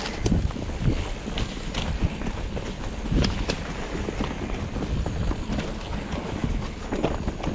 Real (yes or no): yes